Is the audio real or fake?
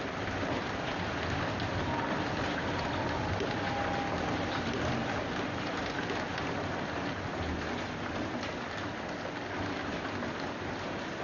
real